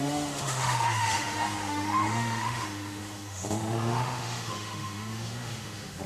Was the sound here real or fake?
fake